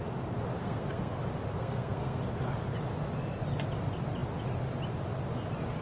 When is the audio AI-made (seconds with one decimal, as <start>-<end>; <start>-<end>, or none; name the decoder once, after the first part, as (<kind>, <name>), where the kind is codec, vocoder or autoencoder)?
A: 0.6-1.2 (codec, SNAC); 1.6-2.2